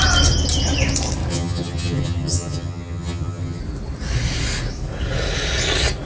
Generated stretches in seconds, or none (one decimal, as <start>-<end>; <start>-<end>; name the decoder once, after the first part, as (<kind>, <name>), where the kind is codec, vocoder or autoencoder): 1.3-3.6 (vocoder, HiFi-GAN)